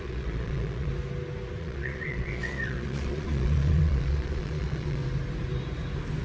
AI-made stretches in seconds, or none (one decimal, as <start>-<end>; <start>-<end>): 0.0-0.9; 1.6-5.0